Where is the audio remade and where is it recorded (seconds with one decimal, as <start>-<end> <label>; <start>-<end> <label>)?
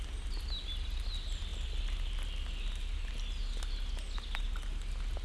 0.0-5.2 recorded